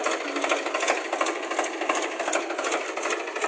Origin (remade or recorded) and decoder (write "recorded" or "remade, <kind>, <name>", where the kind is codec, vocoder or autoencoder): recorded